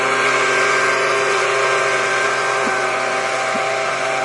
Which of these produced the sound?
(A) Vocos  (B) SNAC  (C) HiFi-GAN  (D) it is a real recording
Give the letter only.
A